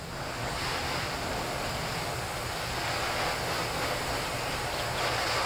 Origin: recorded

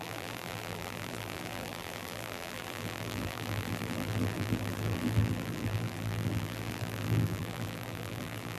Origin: remade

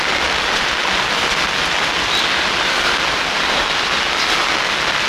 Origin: recorded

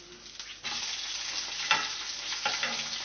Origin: recorded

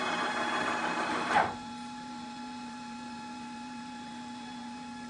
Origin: remade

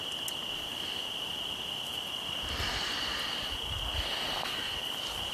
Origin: recorded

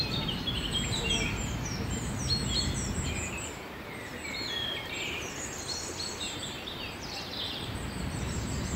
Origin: remade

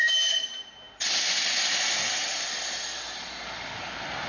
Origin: recorded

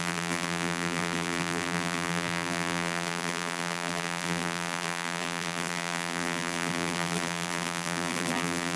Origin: remade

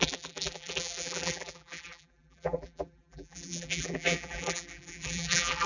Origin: remade